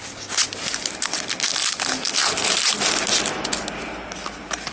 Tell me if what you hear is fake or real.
real